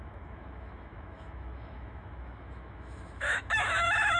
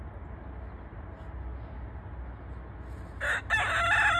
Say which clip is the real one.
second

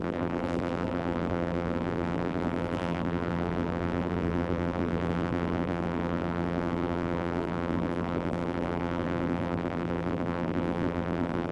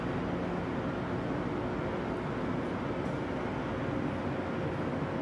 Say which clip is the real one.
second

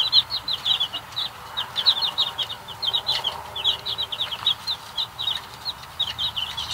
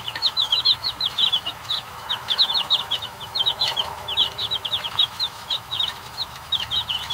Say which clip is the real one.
first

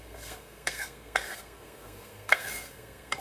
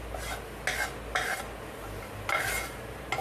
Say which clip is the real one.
second